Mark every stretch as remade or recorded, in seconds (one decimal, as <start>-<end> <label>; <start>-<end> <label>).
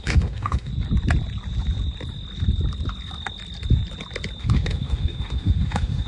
0.0-0.7 remade; 0.7-4.4 recorded; 4.4-6.1 remade